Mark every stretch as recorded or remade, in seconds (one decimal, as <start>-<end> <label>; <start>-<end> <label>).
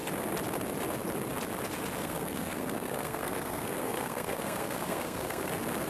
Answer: 0.0-2.0 recorded; 2.0-5.5 remade; 5.5-5.9 recorded